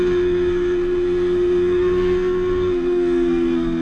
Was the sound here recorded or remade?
remade